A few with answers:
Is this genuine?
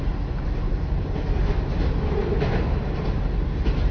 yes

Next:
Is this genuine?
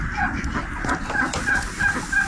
yes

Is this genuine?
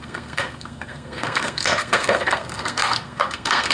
no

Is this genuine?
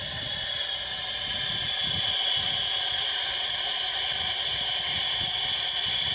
yes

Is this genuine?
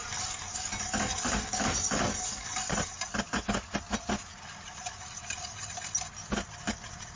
yes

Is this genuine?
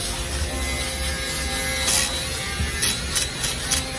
yes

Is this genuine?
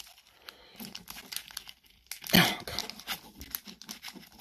yes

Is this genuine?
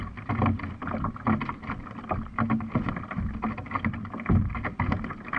yes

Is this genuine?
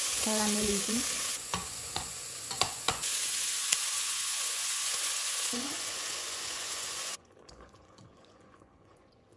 no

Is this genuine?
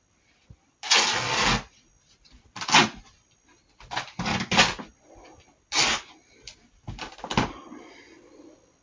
yes